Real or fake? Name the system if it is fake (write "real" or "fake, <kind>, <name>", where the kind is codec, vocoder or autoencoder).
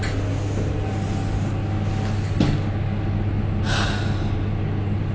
real